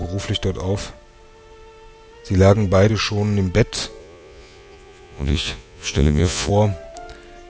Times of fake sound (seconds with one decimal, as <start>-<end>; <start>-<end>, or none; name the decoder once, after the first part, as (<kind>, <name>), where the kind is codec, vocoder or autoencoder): 4.0-6.5 (vocoder, Vocos)